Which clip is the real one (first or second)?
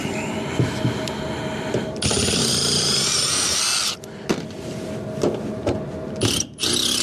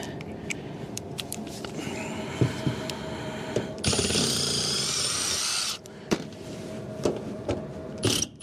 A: first